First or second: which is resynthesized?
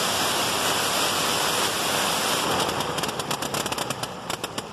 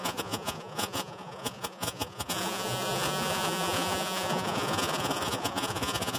second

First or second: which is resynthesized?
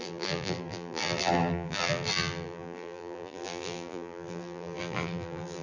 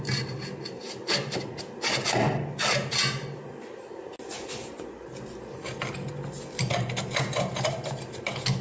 first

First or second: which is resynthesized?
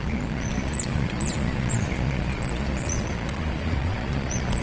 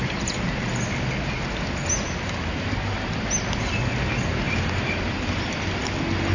first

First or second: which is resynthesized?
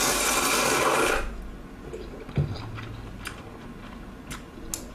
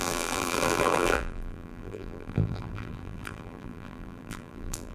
second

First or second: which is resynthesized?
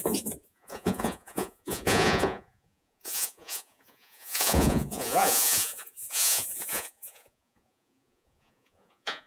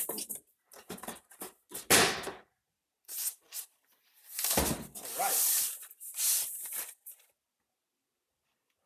first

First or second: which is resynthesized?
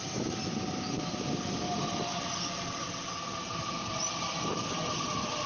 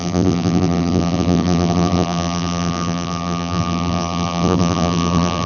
second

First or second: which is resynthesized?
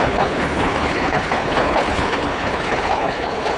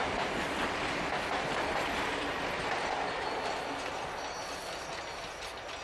first